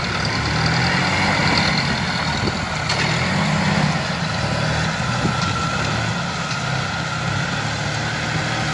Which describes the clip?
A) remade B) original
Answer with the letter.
B